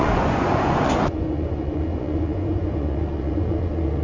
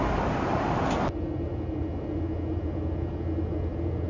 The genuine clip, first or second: second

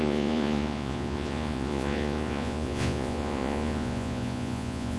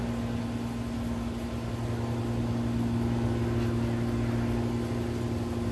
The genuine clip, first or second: second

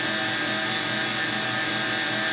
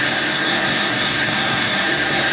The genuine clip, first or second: first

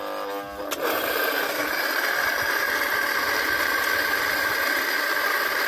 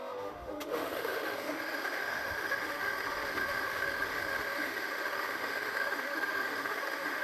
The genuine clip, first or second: first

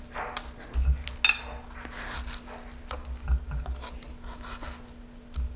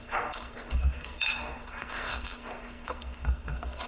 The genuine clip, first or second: first